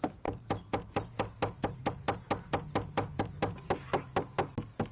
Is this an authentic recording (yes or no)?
yes